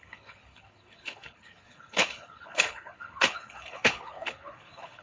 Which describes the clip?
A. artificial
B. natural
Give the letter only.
A